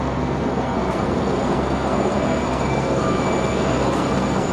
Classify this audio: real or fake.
fake